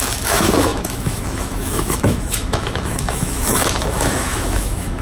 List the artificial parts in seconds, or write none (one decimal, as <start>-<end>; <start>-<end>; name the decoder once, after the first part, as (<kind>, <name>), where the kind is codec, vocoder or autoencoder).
0.0-5.0 (autoencoder, DAC-VAE)